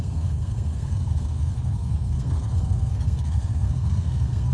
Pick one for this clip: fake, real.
fake